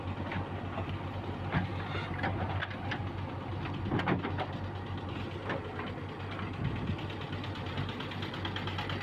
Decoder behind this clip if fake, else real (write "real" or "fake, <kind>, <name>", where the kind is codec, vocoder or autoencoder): real